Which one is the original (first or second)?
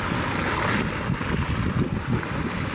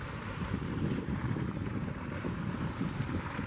first